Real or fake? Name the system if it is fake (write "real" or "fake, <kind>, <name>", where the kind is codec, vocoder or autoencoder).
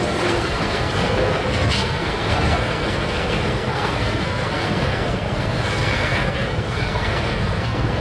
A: fake, codec, SNAC